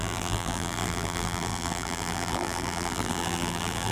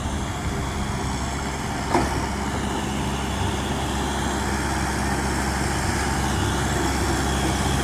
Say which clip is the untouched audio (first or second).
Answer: second